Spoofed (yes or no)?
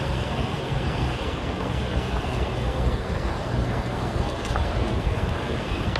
yes